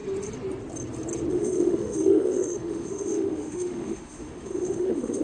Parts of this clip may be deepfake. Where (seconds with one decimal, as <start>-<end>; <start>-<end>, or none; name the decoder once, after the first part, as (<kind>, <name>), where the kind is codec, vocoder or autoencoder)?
1.3-5.2 (autoencoder, DAC-VAE)